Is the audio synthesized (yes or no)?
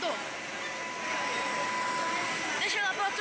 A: no